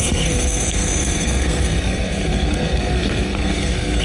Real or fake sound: fake